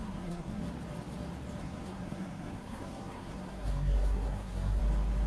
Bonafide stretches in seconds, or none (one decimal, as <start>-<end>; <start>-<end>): 0.6-1.6; 4.8-5.3